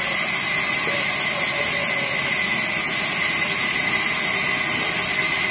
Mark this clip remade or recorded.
recorded